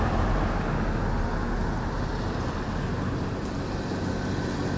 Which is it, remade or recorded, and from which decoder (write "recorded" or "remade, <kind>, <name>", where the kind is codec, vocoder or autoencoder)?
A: recorded